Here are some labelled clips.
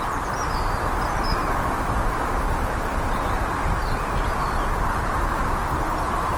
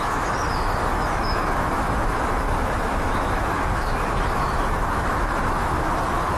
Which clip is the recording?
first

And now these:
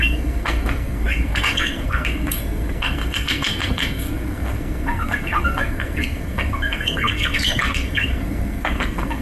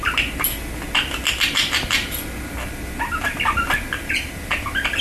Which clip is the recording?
second